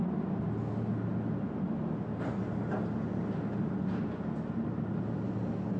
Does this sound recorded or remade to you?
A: recorded